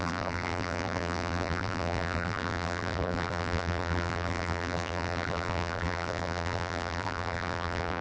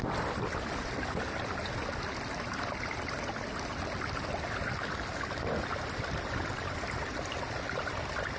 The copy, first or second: first